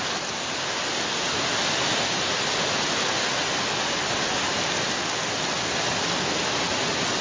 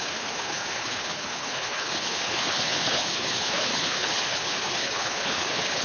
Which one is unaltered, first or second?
first